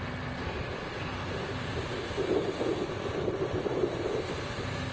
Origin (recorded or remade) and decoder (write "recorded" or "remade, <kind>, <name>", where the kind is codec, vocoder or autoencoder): recorded